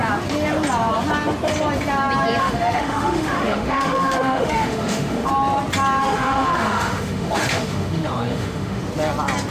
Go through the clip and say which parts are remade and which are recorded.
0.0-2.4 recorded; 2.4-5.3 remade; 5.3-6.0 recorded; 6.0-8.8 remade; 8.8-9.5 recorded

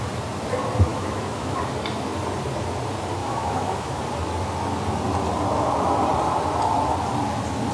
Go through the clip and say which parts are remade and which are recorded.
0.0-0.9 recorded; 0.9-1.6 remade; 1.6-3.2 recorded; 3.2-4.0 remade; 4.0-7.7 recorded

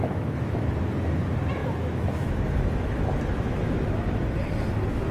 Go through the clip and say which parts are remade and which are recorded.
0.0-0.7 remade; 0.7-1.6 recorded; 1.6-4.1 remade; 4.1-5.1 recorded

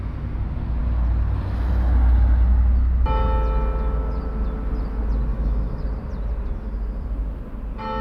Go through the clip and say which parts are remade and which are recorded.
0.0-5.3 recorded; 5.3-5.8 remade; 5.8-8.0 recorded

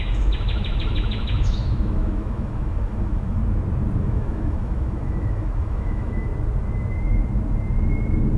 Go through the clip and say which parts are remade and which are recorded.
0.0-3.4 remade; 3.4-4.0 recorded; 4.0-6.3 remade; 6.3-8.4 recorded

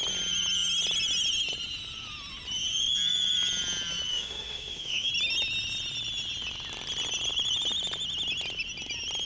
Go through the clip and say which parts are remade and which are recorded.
0.0-4.1 recorded; 4.1-5.1 remade; 5.1-9.2 recorded

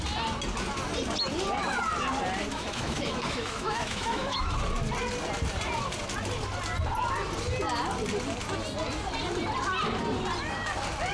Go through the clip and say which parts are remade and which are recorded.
0.0-2.5 recorded; 2.5-4.5 remade; 4.5-11.1 recorded